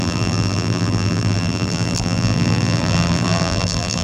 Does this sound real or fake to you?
fake